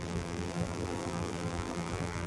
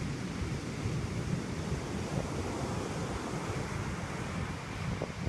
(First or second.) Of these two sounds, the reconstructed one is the first